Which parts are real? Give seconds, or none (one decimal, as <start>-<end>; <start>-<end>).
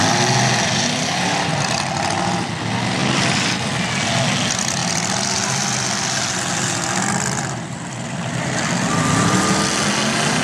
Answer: 0.0-3.0; 3.9-4.8; 9.6-10.4